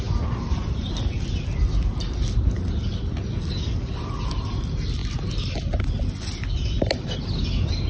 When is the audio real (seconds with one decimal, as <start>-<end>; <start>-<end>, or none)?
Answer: 0.0-7.9